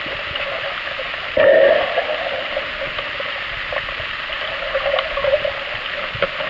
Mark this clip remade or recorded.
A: recorded